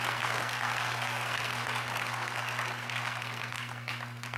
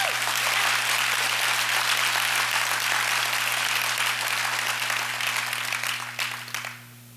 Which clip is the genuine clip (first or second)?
second